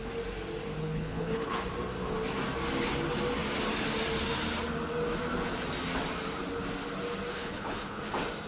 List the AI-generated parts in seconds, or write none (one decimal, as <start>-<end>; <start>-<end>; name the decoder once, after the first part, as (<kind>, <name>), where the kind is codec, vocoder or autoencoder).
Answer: 0.8-1.6 (codec, HILCodec); 7.3-8.0